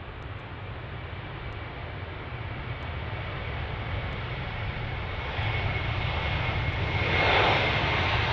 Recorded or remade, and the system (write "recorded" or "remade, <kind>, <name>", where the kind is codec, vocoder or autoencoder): recorded